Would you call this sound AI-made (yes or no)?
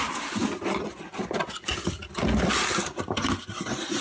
no